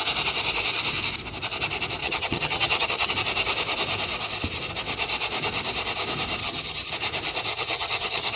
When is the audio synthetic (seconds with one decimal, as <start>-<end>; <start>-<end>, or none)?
2.0-3.1; 6.4-6.9; 7.5-8.4